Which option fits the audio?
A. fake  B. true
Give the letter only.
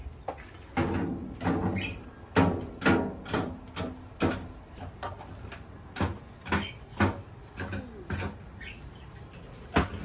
B